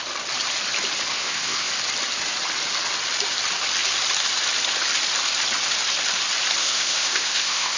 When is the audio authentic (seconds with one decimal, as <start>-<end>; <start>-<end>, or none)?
0.0-1.1; 1.7-6.6